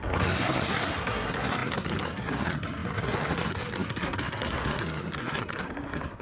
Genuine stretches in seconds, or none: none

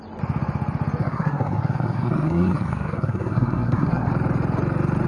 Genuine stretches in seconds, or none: 0.0-1.0; 4.1-5.1

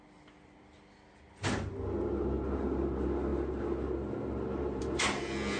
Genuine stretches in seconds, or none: 0.0-5.6

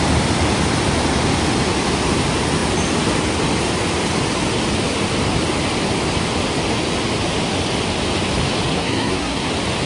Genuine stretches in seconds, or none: 0.0-8.7; 9.5-9.9

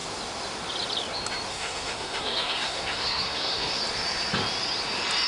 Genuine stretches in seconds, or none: 0.0-1.5; 3.8-5.3

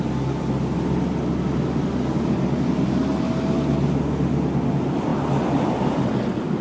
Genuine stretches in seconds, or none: 0.0-6.6

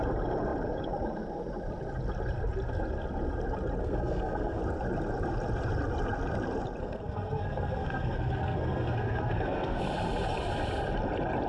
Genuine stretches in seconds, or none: 0.0-3.8; 4.6-6.8; 9.8-11.5

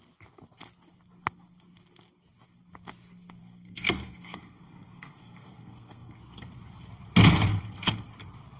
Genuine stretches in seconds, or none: 0.0-3.4; 6.2-7.5; 8.1-8.6